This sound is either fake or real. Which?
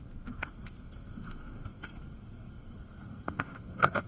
fake